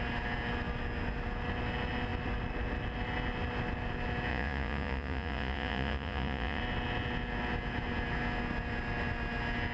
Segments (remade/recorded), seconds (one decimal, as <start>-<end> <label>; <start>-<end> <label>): 0.0-4.3 recorded; 4.3-6.6 remade; 6.6-9.7 recorded